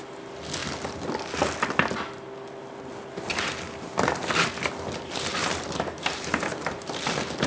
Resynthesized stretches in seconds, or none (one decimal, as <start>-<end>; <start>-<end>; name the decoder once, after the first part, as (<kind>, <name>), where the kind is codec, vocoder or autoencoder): 5.4-6.9 (vocoder, BigVGAN v2)